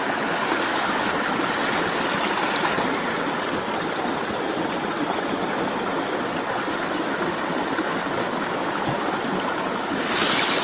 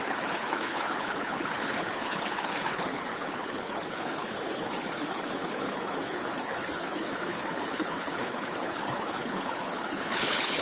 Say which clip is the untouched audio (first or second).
first